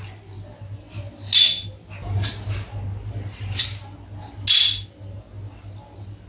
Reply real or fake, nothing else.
real